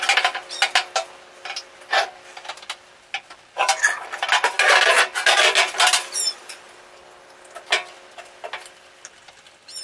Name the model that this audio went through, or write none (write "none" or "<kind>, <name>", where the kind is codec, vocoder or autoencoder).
none